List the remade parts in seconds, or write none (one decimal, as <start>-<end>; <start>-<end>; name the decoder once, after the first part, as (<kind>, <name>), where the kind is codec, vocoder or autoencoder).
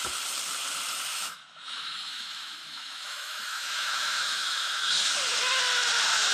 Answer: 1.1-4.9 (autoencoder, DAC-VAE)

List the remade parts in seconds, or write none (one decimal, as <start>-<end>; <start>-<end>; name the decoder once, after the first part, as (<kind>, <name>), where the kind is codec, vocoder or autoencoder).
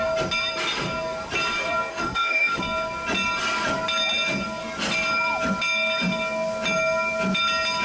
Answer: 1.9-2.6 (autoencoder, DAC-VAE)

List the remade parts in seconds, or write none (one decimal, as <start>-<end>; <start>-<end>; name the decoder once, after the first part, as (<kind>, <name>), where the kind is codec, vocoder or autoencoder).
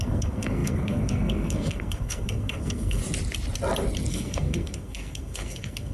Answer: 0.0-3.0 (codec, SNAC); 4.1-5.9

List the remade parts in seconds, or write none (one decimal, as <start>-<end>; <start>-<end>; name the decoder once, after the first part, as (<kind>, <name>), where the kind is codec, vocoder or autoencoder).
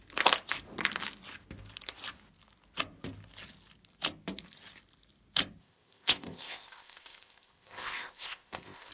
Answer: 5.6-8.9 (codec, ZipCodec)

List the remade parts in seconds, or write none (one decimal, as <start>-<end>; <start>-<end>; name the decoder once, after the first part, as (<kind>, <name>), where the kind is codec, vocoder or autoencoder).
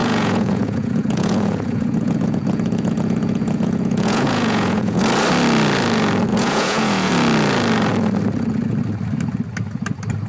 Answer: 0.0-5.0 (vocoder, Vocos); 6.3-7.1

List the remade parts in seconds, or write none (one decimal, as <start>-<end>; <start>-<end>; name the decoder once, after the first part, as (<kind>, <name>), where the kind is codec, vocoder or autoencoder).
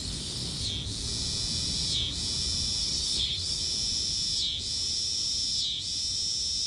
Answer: 0.0-0.6 (codec, SNAC); 2.8-3.6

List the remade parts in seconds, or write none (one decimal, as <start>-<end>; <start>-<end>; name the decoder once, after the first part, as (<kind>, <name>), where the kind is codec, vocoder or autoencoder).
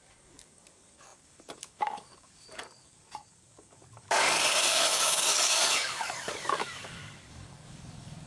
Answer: 0.0-8.3 (codec, DAC)